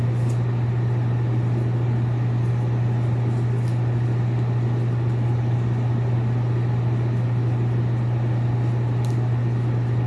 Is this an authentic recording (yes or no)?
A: yes